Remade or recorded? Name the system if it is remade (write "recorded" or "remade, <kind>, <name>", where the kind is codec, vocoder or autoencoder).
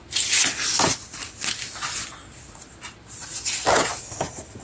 recorded